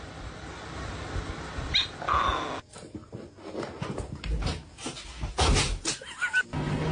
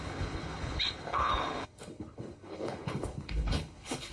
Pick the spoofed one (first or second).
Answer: second